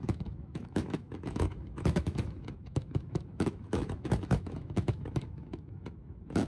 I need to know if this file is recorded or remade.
remade